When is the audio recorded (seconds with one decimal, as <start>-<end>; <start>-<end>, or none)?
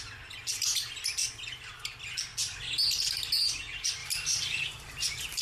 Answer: 0.0-4.0